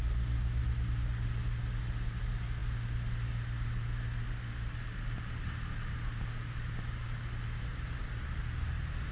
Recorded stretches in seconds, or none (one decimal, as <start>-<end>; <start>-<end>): 0.0-7.7; 8.7-9.1